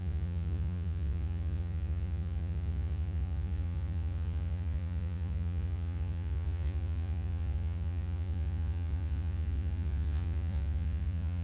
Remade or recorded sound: remade